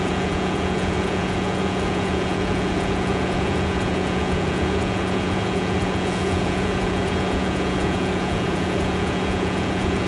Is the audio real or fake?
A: fake